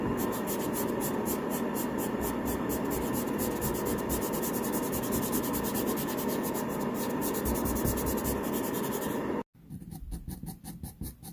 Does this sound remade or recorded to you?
recorded